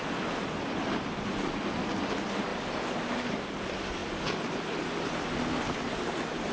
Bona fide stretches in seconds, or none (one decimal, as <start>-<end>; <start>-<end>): 0.0-6.5